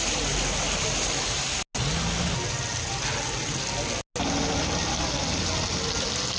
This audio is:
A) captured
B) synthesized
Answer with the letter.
A